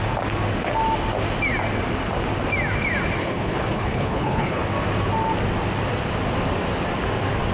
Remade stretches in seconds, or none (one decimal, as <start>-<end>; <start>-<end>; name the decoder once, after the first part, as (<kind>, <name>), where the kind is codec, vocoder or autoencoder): 3.2-4.6 (codec, HILCodec)